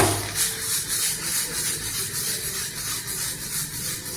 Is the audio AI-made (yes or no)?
no